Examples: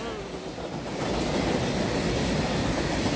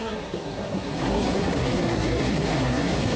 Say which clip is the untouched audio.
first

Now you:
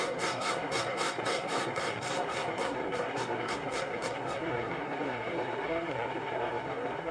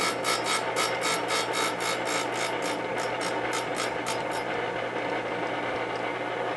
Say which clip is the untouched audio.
second